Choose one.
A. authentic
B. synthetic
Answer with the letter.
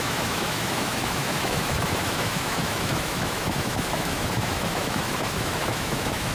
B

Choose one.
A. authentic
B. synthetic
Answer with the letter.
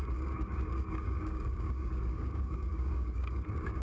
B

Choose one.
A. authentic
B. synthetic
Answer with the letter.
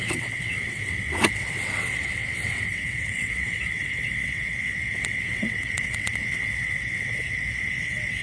B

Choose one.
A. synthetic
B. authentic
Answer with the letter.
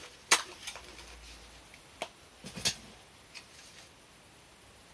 B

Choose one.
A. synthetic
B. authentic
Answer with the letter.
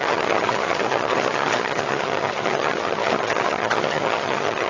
A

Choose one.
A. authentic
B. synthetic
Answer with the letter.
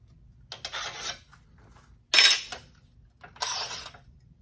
A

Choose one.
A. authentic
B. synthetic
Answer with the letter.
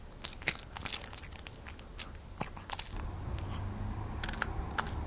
A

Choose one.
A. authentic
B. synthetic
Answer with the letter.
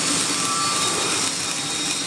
B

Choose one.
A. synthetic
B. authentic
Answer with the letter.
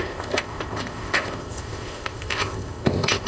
A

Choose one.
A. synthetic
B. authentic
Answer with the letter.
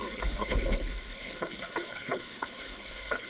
A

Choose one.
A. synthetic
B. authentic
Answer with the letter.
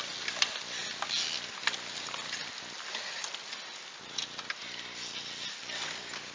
B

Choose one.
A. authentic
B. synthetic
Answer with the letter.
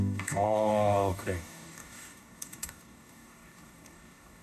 B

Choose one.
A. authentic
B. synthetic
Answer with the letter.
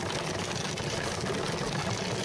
A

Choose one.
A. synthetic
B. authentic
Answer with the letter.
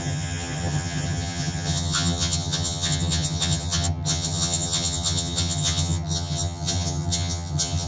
A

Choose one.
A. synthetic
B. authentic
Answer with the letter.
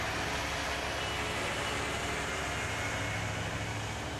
B